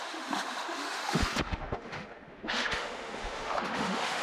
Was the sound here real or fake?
fake